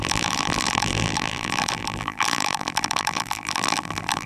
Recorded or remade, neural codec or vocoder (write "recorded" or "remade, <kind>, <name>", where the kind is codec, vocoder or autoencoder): remade, vocoder, BigVGAN v2